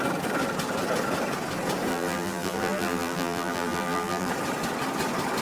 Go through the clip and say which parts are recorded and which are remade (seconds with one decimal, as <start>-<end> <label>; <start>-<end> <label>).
0.0-1.9 recorded; 1.9-4.3 remade; 4.3-5.4 recorded